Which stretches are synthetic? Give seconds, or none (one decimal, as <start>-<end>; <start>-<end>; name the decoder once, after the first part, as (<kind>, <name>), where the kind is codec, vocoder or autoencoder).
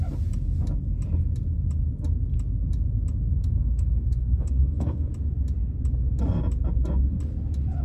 3.4-5.1 (codec, SNAC)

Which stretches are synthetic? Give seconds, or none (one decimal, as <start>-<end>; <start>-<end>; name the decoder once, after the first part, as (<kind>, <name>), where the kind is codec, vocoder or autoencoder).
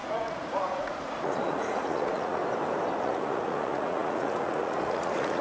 0.0-2.4 (vocoder, Vocos); 3.0-5.4